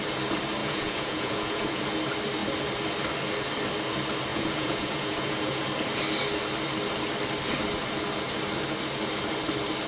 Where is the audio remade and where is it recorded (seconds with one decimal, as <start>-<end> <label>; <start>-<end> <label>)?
0.0-0.6 recorded; 0.6-1.8 remade; 1.8-4.3 recorded; 4.3-5.6 remade; 5.6-9.9 recorded